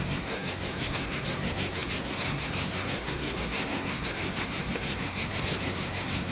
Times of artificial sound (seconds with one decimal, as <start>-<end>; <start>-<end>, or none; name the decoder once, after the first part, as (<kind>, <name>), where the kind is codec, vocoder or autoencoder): 0.0-6.3 (codec, SNAC)